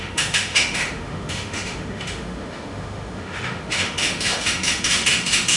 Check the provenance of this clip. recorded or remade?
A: remade